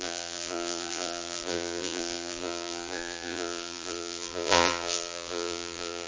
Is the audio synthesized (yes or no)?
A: yes